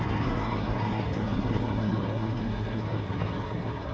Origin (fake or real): fake